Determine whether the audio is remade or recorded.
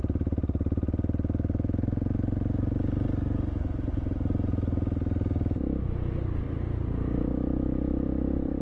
recorded